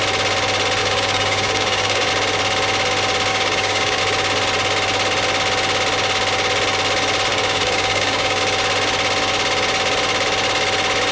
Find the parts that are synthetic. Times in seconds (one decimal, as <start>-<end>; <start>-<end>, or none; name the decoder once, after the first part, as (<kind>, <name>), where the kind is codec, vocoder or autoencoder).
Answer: 0.8-2.1 (codec, DAC); 3.3-4.0; 7.3-8.4